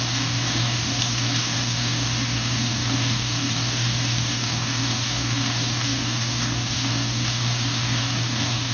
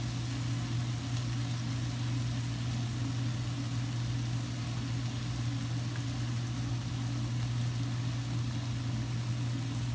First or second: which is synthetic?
first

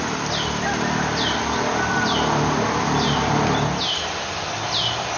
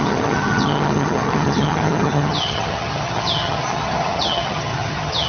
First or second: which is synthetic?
second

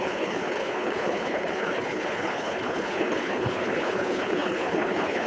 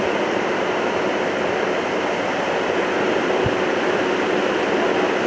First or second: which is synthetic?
first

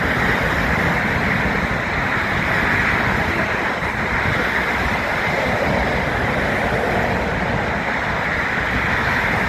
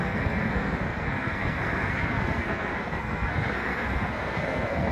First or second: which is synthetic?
second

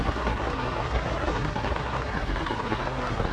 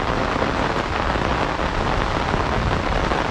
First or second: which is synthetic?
first